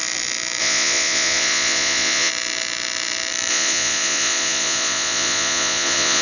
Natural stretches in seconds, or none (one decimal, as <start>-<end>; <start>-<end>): 0.0-0.6; 2.3-3.5